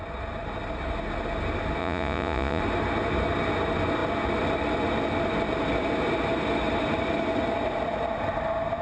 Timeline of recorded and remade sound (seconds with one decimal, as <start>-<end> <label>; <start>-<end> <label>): 0.0-1.8 recorded; 1.8-2.6 remade; 2.6-8.8 recorded